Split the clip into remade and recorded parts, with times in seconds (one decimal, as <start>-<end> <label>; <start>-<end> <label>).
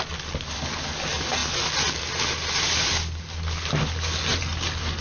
0.0-5.0 recorded